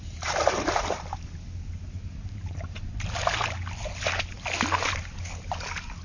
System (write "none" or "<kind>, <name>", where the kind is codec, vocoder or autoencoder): none